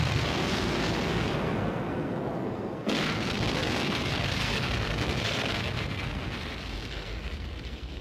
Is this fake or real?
fake